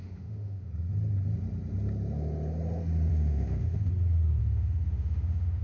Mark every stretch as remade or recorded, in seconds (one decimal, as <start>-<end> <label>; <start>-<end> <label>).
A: 0.0-0.7 remade; 0.7-3.1 recorded; 3.1-3.9 remade; 3.9-4.4 recorded; 4.4-5.6 remade